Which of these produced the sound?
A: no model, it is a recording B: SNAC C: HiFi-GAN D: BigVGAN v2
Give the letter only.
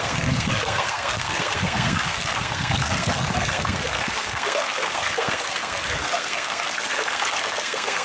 B